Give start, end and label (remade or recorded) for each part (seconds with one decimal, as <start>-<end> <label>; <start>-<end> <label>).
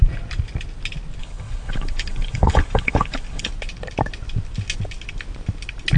0.0-1.2 recorded; 1.2-3.5 remade; 3.5-6.0 recorded